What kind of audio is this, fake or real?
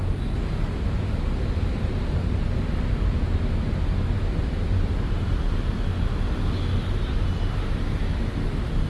real